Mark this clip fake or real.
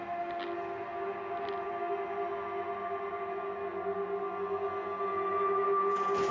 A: real